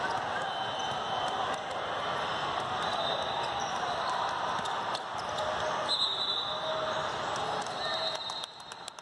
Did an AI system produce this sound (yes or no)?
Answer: no